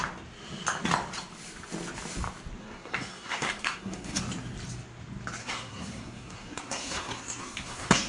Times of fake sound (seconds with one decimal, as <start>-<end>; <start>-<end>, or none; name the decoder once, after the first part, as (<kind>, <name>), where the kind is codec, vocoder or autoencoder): 2.6-4.2 (codec, SNAC); 5.4-8.1